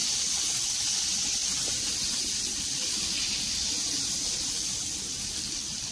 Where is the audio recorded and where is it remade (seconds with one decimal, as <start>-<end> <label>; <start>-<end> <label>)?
0.0-5.9 recorded